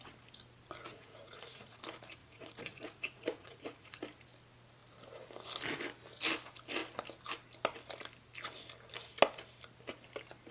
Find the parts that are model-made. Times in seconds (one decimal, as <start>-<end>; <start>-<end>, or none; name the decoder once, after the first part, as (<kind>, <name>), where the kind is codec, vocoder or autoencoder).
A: 0.9-1.8 (vocoder, Vocos); 2.2-4.0